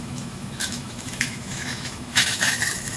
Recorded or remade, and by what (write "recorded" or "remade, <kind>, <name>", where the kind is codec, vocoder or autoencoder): remade, autoencoder, DAC-VAE